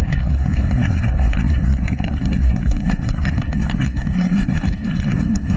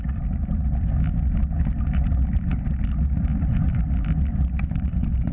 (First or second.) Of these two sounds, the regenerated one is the first